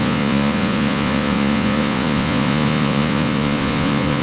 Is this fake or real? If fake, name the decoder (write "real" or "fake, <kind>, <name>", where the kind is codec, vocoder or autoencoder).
fake, vocoder, Vocos